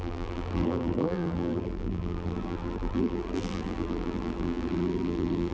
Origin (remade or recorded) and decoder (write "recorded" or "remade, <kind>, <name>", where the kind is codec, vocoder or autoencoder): remade, vocoder, BigVGAN v2